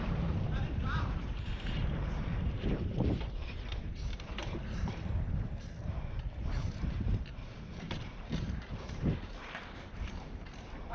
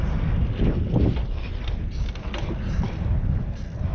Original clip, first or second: second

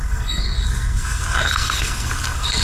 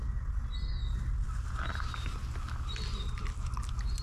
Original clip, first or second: second